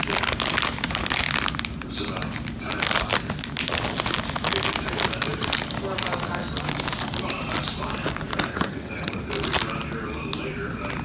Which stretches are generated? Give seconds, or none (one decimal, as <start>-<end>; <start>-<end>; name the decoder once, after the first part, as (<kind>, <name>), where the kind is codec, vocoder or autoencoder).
8.5-9.2 (vocoder, HiFi-GAN)